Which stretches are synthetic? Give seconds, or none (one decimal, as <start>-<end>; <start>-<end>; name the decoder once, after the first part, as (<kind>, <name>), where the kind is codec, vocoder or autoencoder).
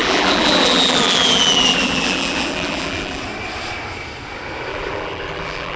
0.0-3.2 (vocoder, BigVGAN v2); 4.7-5.8